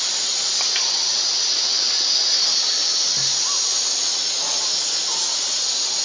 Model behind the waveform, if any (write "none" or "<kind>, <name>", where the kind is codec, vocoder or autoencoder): none